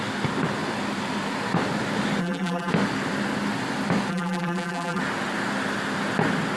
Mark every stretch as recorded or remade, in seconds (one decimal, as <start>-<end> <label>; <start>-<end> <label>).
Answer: 0.0-2.2 recorded; 2.2-2.7 remade; 2.7-4.1 recorded; 4.1-5.0 remade; 5.0-6.6 recorded